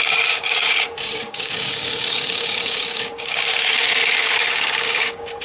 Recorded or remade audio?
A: remade